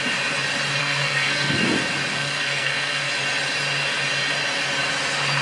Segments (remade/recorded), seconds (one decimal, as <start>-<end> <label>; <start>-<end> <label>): 0.0-0.8 recorded; 0.8-1.6 remade; 1.6-2.1 recorded; 2.1-3.1 remade; 3.1-5.4 recorded